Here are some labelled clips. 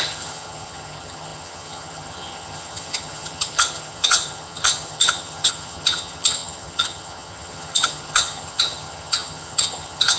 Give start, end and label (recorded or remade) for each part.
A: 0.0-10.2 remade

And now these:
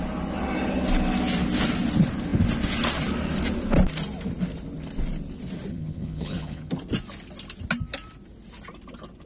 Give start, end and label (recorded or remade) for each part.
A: 0.0-5.7 recorded; 5.7-6.7 remade; 6.7-9.3 recorded

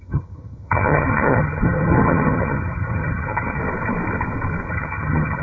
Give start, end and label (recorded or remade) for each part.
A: 0.0-3.6 remade; 3.6-4.7 recorded; 4.7-5.4 remade

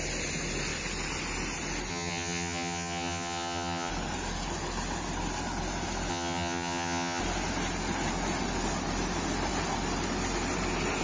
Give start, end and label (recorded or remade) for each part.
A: 0.0-1.9 recorded; 1.9-3.9 remade; 3.9-6.1 recorded; 6.1-7.2 remade; 7.2-11.0 recorded

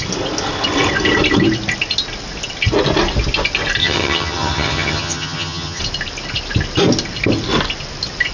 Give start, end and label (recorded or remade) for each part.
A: 0.0-3.8 recorded; 3.8-5.8 remade; 5.8-8.3 recorded